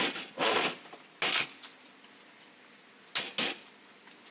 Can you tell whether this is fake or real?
real